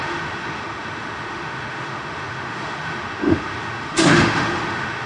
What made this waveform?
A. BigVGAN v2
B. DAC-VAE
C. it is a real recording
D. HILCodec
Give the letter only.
B